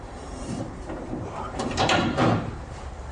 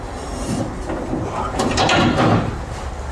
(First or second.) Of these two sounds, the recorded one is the second